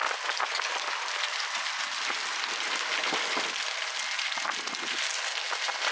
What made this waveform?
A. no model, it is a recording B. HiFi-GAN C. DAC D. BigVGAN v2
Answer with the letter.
A